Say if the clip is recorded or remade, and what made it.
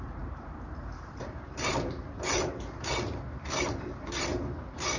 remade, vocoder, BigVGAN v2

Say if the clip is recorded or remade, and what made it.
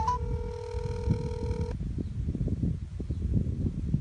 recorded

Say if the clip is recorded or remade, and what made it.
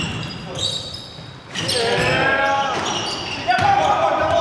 remade, vocoder, BigVGAN v2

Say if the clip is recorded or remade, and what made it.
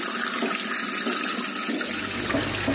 recorded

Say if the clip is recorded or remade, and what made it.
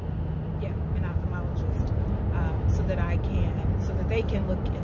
recorded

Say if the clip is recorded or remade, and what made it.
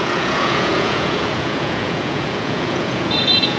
remade, vocoder, Vocos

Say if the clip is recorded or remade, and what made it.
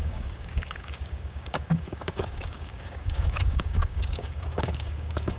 remade, codec, DAC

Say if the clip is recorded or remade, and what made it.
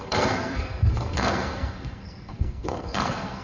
remade, codec, SNAC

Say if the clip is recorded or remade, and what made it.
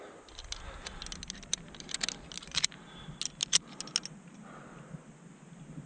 recorded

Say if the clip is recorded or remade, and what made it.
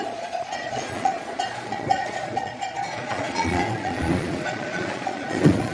remade, vocoder, Vocos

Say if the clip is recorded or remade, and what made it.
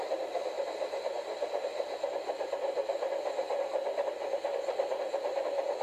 recorded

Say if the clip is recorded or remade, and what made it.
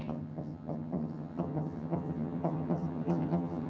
remade, vocoder, HiFi-GAN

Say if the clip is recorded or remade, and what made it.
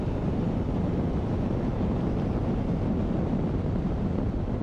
recorded